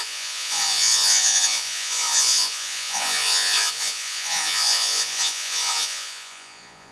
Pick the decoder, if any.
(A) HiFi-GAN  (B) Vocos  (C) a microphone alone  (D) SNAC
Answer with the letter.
B